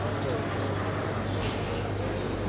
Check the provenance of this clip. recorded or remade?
recorded